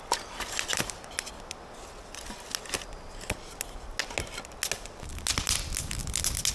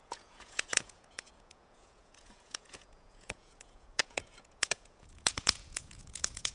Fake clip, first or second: second